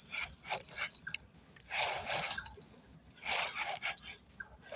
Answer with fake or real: real